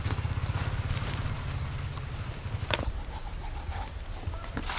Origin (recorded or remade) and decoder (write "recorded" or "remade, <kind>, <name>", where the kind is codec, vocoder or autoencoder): recorded